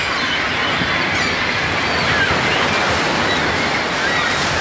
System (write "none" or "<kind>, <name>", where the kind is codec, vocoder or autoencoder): none